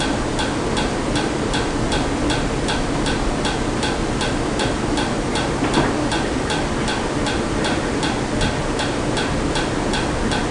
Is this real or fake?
real